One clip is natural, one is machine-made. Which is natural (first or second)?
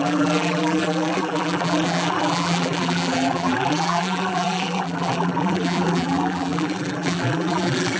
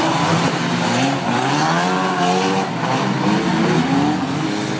second